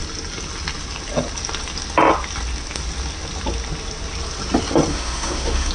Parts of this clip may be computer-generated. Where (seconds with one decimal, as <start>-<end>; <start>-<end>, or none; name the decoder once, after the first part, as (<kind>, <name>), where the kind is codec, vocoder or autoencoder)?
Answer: 4.9-5.7 (autoencoder, DAC-VAE)